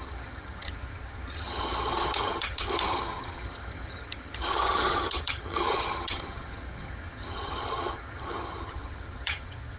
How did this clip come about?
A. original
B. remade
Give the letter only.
B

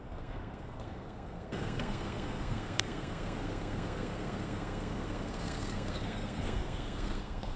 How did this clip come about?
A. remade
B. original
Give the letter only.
A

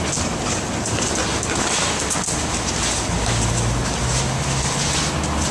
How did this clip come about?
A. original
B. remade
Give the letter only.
A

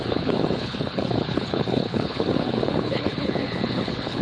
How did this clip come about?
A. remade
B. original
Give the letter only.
A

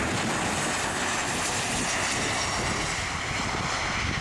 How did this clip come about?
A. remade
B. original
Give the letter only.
B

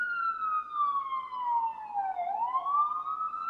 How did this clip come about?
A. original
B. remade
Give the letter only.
A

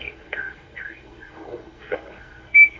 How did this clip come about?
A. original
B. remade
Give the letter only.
B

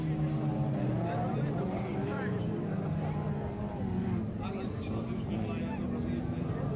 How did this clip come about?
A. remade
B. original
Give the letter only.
B